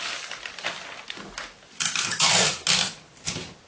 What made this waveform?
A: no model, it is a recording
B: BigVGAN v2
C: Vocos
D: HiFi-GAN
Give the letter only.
A